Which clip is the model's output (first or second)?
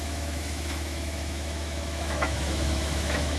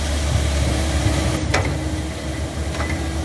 first